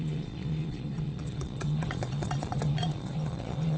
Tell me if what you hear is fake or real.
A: fake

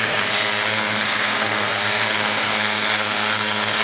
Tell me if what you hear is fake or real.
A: fake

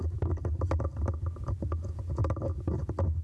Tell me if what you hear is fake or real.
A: real